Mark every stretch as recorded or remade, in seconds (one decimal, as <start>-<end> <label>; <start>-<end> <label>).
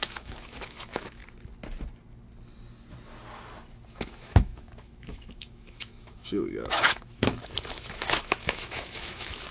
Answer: 0.0-1.2 remade; 1.2-3.9 recorded; 3.9-9.5 remade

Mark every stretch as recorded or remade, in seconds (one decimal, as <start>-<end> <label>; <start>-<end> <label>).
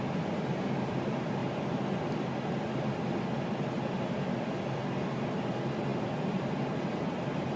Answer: 0.0-7.6 recorded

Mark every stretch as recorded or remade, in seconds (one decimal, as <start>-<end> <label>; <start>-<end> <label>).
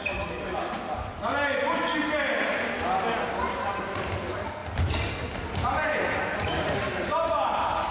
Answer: 0.0-7.9 recorded